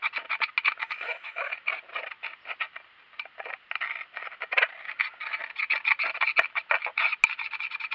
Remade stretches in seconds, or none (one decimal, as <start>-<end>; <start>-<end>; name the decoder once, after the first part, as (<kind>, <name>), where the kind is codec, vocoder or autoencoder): 0.8-1.5 (autoencoder, DAC-VAE)